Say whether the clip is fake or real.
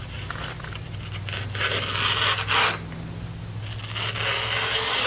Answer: real